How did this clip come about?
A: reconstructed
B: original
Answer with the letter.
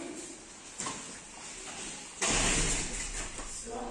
B